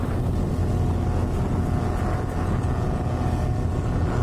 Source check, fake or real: real